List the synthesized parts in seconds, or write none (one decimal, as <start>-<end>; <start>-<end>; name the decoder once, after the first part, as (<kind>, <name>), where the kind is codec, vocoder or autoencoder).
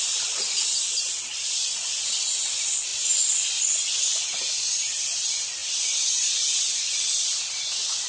none